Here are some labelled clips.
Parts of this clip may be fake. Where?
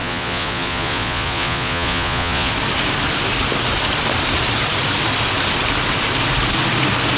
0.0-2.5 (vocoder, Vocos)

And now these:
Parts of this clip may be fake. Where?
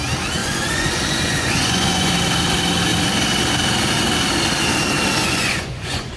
0.4-2.1 (vocoder, Vocos); 5.2-6.2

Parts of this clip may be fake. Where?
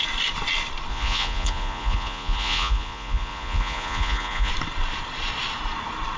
0.9-4.5 (vocoder, Vocos)